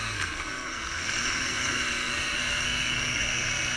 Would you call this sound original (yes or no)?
no